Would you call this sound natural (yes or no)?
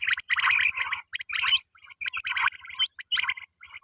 yes